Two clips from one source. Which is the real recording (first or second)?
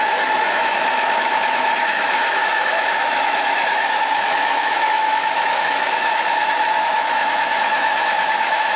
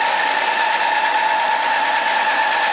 second